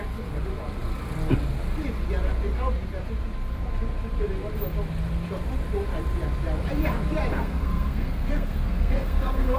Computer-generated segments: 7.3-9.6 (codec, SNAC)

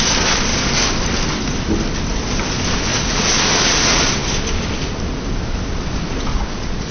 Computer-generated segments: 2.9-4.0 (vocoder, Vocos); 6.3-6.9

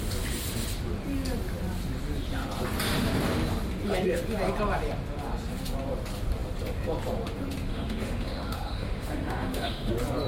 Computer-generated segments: 7.7-9.9 (autoencoder, DAC-VAE)

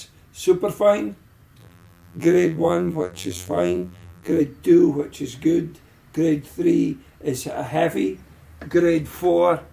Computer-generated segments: 1.6-4.4 (vocoder, BigVGAN v2)

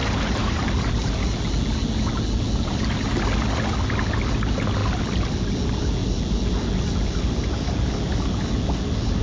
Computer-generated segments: none

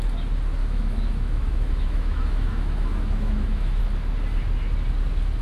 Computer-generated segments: 0.6-3.8 (autoencoder, DAC-VAE)

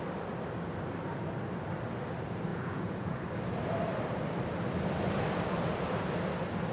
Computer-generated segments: 2.5-3.2 (vocoder, Vocos)